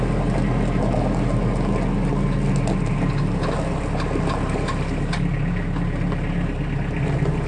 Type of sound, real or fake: real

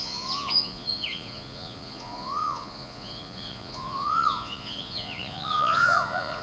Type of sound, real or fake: fake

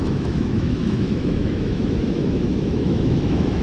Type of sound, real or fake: fake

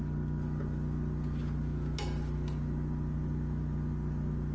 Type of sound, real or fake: real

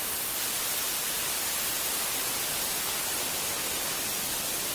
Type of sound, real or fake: real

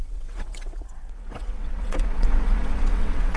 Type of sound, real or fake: fake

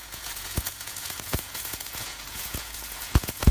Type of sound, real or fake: fake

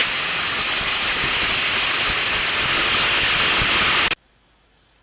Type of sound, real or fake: real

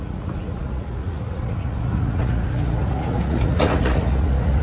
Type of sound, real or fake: fake